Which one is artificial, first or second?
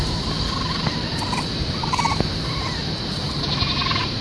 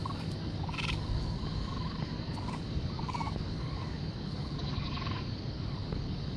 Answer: second